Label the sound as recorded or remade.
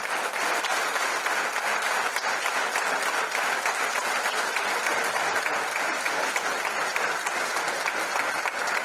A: remade